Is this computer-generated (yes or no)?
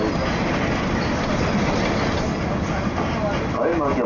no